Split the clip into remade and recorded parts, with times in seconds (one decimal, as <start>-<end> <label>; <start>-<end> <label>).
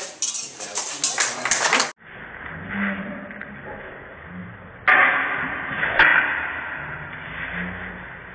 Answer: 0.0-8.3 recorded